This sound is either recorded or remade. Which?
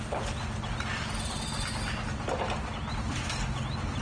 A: recorded